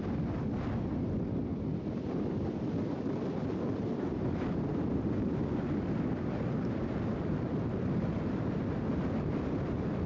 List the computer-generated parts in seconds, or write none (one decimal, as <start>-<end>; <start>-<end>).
0.0-1.4; 2.3-10.1